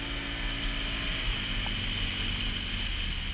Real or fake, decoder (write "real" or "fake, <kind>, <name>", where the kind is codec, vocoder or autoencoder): real